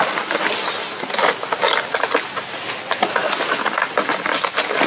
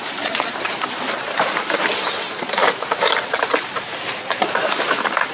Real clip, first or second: first